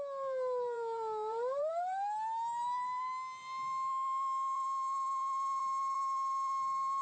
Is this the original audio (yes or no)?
no